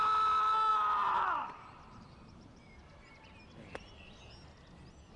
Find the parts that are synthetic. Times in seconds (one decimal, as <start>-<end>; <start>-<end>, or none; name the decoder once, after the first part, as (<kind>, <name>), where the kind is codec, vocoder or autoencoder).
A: 0.7-3.4 (vocoder, BigVGAN v2)